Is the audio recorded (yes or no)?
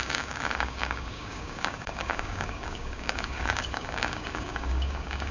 no